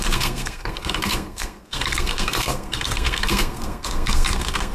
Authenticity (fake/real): fake